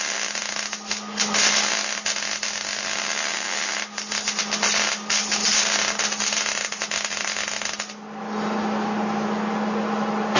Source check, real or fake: real